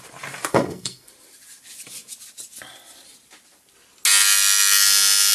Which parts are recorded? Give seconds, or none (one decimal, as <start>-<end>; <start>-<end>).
0.0-0.5; 1.1-5.3